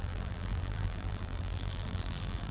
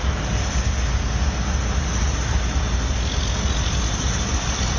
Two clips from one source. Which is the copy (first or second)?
first